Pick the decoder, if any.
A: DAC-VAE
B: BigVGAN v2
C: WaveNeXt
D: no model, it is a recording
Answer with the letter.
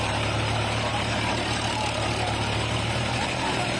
B